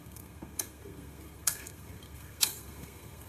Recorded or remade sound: remade